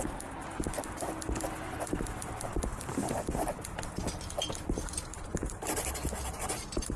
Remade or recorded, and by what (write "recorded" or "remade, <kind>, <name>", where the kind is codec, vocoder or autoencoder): recorded